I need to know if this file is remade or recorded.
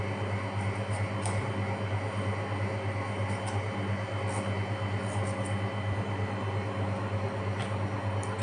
recorded